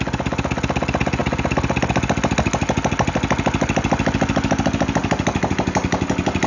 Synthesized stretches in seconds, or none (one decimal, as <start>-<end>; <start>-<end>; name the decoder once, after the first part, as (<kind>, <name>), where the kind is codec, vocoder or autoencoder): none